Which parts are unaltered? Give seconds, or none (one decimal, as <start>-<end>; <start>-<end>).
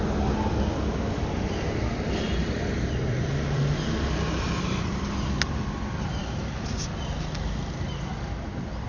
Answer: 0.0-2.4; 5.3-8.9